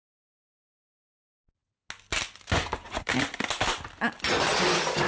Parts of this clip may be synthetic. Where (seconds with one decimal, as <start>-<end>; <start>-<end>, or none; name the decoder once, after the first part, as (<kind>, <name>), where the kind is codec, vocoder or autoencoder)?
none